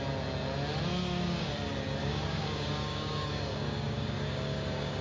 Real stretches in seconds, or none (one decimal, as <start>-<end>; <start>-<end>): 0.0-0.9; 1.5-2.0